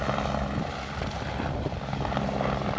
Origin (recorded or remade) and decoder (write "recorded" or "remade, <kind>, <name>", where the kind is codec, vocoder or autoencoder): recorded